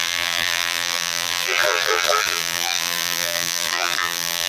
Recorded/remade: remade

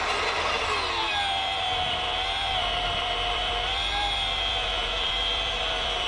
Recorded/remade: remade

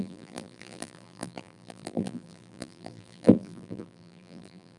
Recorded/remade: remade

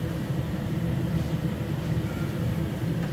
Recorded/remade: remade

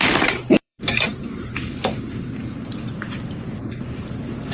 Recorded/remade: remade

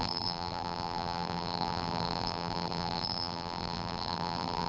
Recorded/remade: remade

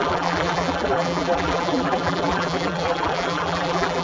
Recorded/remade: remade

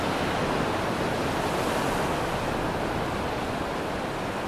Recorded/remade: recorded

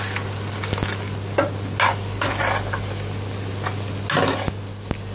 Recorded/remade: recorded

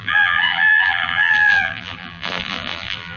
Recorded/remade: remade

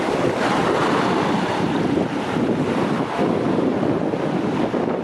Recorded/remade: remade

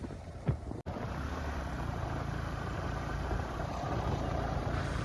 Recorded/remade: remade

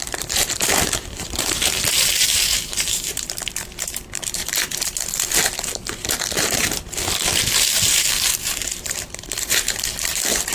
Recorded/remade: remade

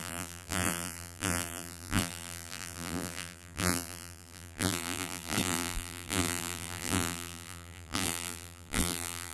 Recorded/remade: remade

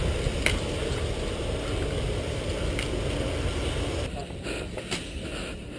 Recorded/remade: recorded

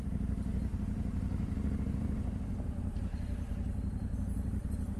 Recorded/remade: remade